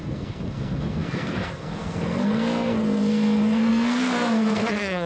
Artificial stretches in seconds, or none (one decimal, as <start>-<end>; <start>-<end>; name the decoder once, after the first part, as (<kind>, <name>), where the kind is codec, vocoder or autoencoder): 0.0-5.1 (codec, SNAC)